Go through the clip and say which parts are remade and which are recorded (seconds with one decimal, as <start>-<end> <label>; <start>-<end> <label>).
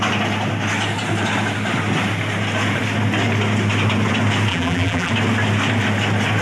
0.0-4.5 recorded; 4.5-5.1 remade; 5.1-6.4 recorded